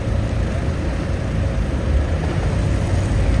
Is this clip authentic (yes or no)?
yes